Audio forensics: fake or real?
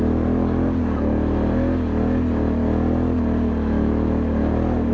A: real